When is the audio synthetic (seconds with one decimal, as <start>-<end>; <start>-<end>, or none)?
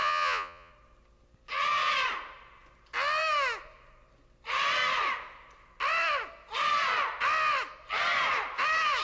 0.0-0.7